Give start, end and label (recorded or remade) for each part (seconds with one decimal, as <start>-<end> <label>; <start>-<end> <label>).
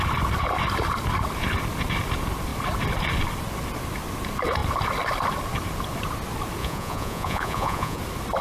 0.0-6.6 recorded; 6.6-8.0 remade; 8.0-8.4 recorded